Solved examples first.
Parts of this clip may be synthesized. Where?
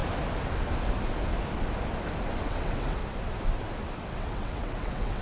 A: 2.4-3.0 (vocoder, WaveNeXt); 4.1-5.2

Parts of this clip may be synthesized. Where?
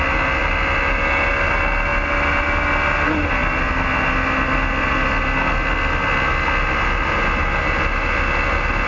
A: none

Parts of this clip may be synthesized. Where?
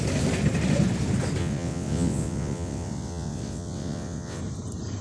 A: 1.4-4.4 (vocoder, WaveNeXt)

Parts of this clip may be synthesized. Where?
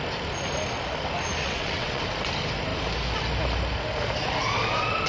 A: 1.4-2.0 (vocoder, WaveNeXt)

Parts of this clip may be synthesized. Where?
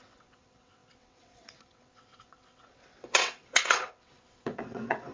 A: 0.0-5.1 (vocoder, WaveNeXt)